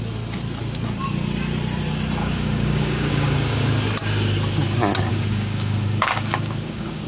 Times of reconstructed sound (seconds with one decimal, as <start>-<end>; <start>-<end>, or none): 2.2-3.7; 5.1-7.1